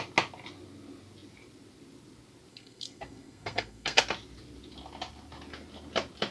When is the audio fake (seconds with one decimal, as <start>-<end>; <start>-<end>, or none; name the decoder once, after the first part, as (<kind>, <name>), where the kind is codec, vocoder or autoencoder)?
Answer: 2.5-4.0 (codec, SNAC)